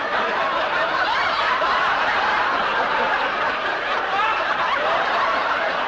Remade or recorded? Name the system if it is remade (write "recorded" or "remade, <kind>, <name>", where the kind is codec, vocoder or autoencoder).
remade, vocoder, BigVGAN v2